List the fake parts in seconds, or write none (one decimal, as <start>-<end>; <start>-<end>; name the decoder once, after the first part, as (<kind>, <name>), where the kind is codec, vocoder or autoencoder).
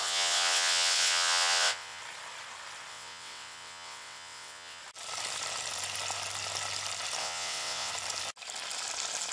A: 0.0-2.0 (vocoder, WaveNeXt); 2.9-4.8; 7.2-7.9